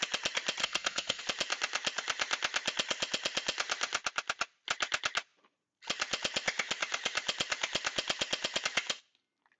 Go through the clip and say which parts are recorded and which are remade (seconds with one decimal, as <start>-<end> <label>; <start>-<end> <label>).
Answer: 0.0-0.6 recorded; 0.6-1.2 remade; 1.2-9.6 recorded